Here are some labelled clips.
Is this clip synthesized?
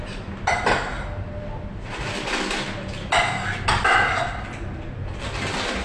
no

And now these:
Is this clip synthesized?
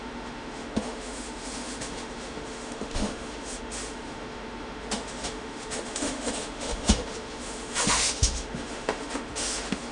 yes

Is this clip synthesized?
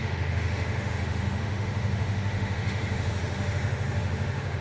yes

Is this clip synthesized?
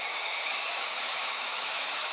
yes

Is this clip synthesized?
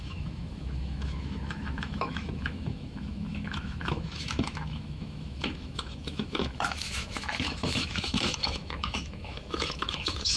yes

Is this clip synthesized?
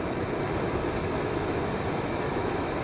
yes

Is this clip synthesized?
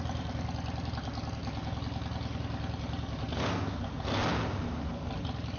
no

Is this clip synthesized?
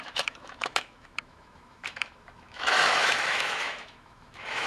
yes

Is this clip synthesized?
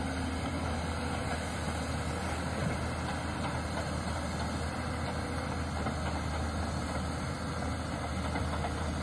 no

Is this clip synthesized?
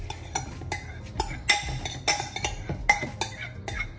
no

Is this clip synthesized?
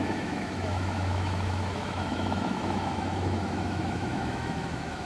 yes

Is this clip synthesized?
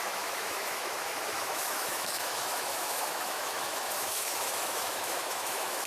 yes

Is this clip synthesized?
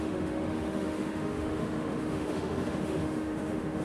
yes